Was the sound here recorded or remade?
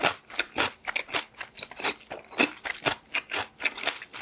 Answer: recorded